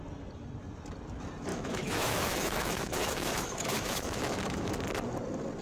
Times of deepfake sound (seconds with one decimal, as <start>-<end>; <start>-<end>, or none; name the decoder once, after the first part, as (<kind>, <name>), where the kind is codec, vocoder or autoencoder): 1.5-4.7 (autoencoder, DAC-VAE)